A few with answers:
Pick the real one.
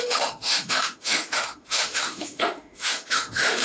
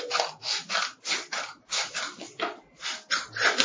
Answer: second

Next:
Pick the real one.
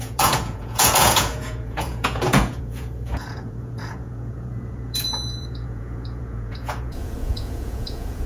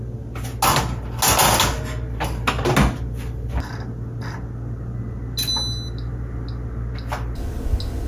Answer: second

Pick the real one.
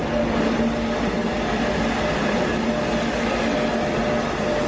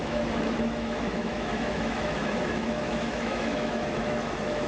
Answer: first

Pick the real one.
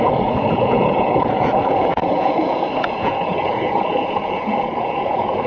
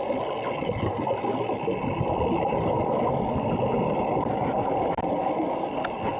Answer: second